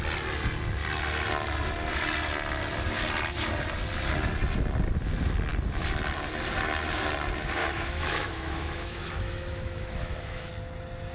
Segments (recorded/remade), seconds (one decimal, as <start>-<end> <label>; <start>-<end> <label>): 0.0-7.6 recorded; 7.6-10.5 remade; 10.5-11.1 recorded